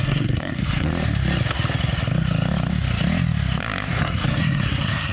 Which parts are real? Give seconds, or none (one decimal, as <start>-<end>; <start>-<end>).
0.9-4.0